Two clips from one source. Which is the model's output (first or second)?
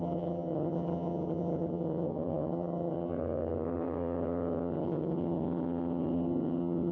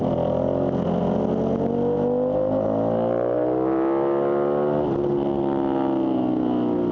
first